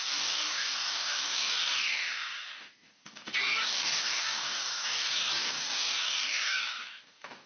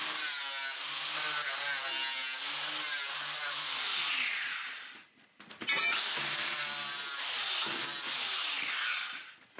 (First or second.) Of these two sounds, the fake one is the first